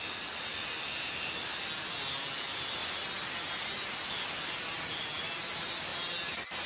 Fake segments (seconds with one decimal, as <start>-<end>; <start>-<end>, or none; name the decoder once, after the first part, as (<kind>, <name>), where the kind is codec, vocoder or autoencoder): none